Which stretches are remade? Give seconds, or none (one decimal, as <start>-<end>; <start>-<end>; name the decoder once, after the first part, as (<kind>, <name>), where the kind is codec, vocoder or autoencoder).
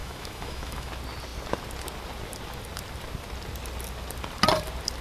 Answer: 0.0-0.9 (autoencoder, DAC-VAE)